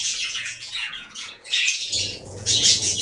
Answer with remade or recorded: remade